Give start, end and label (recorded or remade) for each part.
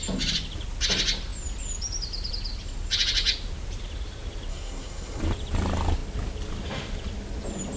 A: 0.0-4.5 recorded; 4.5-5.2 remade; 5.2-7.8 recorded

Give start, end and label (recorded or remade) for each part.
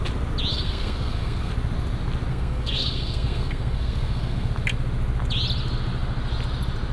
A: 0.0-0.5 recorded; 0.5-1.5 remade; 1.5-2.3 recorded; 2.3-4.5 remade; 4.5-6.9 recorded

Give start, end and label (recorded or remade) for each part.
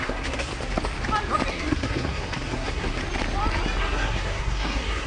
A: 0.0-0.5 remade; 0.5-1.5 recorded; 1.5-3.0 remade; 3.0-3.8 recorded; 3.8-5.1 remade